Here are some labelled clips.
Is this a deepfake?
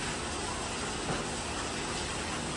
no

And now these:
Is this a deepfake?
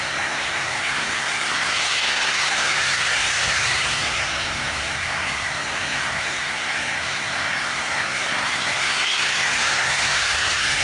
yes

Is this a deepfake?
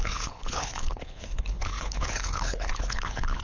yes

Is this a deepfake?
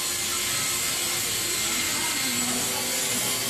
no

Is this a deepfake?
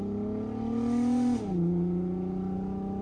no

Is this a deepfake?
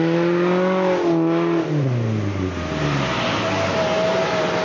no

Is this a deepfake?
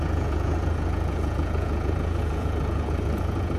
yes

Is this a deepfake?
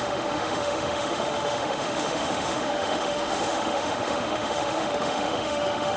yes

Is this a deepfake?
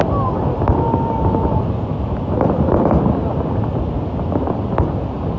no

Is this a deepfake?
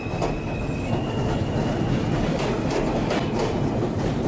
no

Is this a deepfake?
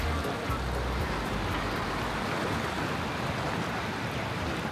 no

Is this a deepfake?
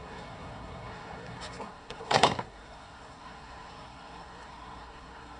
yes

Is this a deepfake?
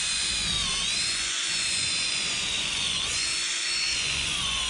yes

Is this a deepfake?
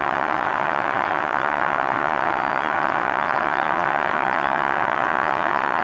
yes